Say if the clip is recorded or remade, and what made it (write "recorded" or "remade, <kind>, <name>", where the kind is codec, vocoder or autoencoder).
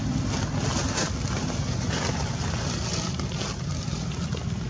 recorded